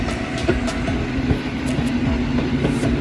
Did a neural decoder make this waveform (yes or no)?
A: no